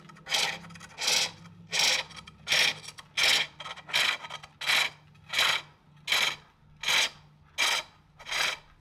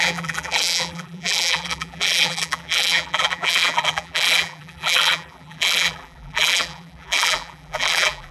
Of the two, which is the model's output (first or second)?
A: second